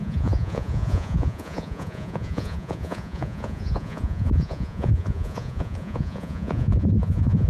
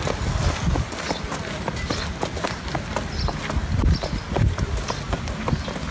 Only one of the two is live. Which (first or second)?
second